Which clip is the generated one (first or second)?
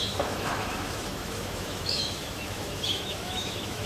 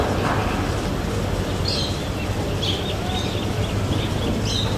first